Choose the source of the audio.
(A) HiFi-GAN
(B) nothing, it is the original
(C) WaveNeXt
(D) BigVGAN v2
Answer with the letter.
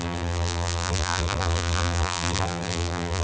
D